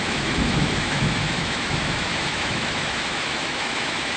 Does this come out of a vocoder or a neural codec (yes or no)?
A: yes